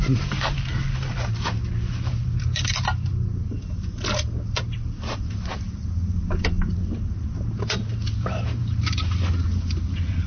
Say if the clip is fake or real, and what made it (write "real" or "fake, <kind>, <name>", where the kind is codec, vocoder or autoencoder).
fake, vocoder, BigVGAN v2